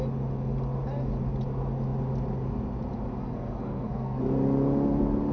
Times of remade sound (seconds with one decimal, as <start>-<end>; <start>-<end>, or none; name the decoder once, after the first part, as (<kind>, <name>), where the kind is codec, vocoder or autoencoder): 3.2-4.2 (codec, SNAC)